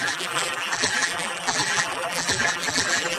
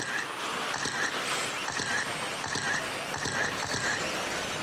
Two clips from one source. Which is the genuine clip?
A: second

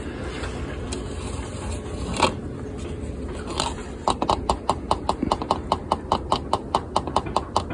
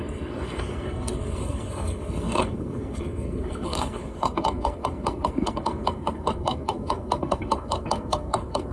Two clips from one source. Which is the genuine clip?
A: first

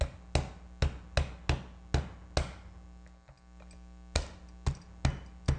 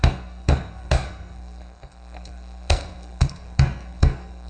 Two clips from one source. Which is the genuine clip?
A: first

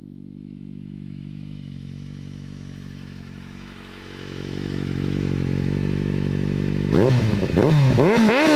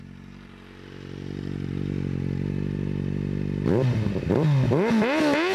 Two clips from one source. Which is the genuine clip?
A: second